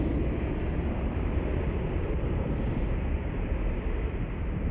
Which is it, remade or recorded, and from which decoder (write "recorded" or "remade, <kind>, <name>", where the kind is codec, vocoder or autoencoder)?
recorded